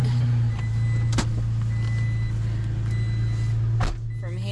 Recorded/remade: recorded